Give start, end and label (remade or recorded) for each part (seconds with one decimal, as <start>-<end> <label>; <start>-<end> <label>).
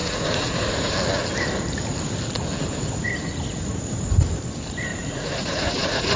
0.0-0.9 remade; 0.9-4.9 recorded; 4.9-6.2 remade